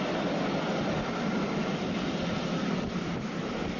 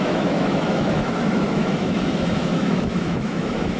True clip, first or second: first